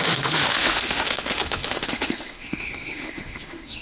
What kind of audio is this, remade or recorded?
remade